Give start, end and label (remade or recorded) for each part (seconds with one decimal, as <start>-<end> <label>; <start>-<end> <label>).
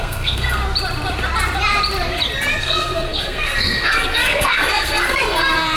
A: 0.0-0.6 remade; 0.6-2.6 recorded; 2.6-5.8 remade